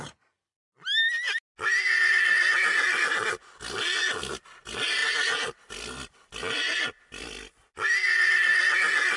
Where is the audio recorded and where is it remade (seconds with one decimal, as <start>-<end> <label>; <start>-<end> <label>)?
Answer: 0.0-9.2 recorded